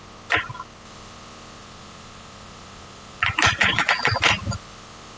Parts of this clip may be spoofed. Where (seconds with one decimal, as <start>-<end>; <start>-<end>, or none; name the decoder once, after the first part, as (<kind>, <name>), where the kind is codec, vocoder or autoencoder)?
1.6-4.1 (vocoder, Vocos)